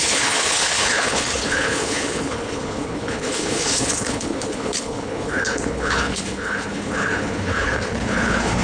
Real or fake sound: fake